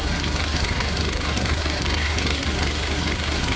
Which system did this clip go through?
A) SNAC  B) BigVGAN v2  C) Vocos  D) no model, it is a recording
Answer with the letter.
A